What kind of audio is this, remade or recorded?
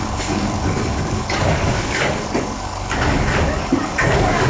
remade